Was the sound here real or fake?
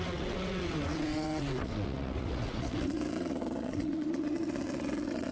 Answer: fake